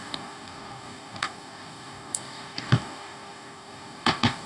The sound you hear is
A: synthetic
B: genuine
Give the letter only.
A